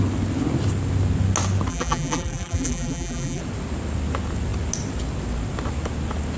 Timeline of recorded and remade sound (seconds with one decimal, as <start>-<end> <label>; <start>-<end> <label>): 0.0-1.7 recorded; 1.7-3.4 remade; 3.4-6.4 recorded